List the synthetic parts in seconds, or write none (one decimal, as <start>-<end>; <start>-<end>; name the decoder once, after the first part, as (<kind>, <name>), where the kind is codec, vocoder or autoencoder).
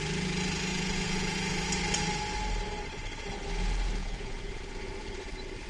0.7-1.5 (vocoder, Vocos); 4.0-4.7